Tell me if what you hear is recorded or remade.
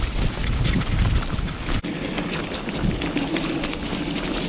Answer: recorded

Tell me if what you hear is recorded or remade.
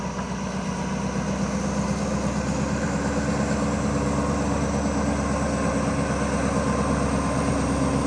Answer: recorded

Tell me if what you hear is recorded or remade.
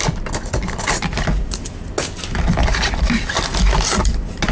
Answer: recorded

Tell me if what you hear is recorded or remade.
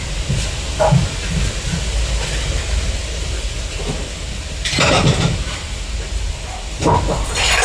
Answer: recorded